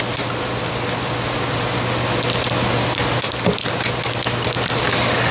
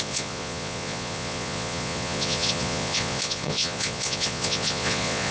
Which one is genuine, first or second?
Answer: first